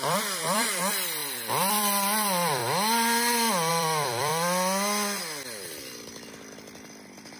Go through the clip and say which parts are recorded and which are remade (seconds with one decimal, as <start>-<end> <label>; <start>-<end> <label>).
0.0-2.6 remade; 2.6-3.7 recorded; 3.7-4.3 remade; 4.3-5.9 recorded; 5.9-7.4 remade